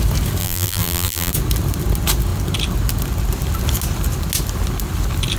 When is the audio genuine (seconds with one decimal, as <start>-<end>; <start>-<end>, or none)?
0.0-0.4; 1.3-5.4